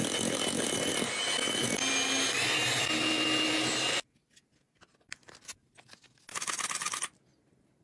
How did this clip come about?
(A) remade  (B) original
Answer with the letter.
B